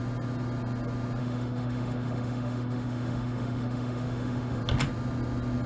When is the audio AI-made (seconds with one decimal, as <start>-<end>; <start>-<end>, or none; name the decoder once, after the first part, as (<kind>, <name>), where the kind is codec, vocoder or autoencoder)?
1.2-4.6 (autoencoder, DAC-VAE)